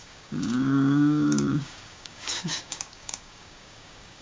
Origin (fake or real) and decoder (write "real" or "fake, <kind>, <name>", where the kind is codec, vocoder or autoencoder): fake, codec, DAC